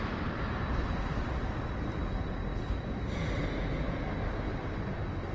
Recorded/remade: recorded